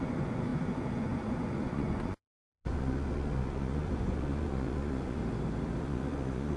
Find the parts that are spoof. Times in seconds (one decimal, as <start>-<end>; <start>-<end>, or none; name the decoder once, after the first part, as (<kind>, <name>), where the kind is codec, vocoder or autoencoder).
0.0-5.2 (vocoder, Vocos); 5.8-6.6